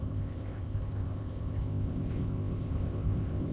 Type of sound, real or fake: fake